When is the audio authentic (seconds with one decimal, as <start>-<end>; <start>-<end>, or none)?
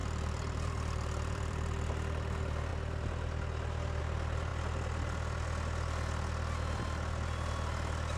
1.9-8.2